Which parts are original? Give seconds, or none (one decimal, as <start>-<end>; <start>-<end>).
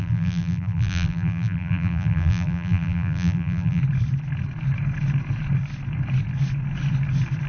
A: 3.8-7.5